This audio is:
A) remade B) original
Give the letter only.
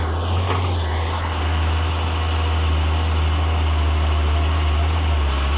B